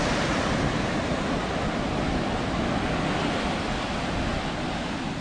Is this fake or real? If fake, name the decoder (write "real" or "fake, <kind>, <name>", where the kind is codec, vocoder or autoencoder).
real